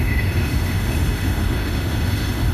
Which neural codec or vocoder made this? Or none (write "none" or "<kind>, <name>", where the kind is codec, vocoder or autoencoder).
autoencoder, DAC-VAE